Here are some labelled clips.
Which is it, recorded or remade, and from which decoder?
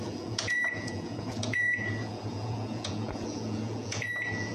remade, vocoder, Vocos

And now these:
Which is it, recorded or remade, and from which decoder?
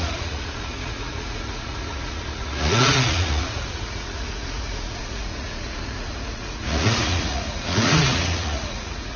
remade, vocoder, Vocos